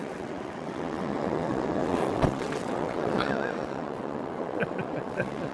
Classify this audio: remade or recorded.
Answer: remade